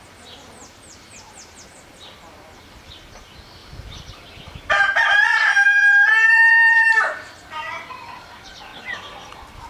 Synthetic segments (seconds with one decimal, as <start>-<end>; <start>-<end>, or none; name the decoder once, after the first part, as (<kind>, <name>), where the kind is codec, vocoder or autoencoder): 3.6-7.7 (vocoder, BigVGAN v2)